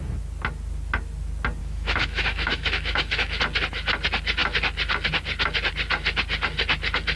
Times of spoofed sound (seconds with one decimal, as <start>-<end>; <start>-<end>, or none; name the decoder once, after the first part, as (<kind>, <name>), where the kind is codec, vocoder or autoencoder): 1.6-3.4 (autoencoder, DAC-VAE)